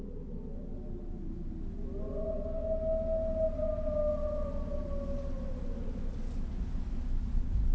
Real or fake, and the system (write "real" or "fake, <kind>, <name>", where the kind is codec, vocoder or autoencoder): real